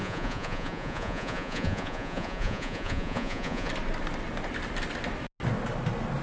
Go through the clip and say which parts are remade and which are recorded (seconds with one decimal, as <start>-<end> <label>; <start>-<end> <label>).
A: 0.0-3.7 remade; 3.7-6.2 recorded